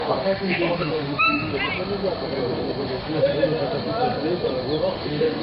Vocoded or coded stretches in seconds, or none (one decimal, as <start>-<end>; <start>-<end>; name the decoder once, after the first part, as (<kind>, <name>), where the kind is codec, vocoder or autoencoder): 0.0-1.5 (autoencoder, DAC-VAE); 2.8-3.3; 4.9-5.4